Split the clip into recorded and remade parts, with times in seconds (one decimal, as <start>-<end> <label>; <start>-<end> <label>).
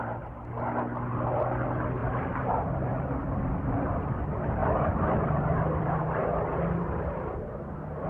0.0-2.0 recorded; 2.0-3.7 remade; 3.7-4.6 recorded; 4.6-8.1 remade